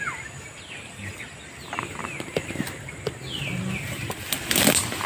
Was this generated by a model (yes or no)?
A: no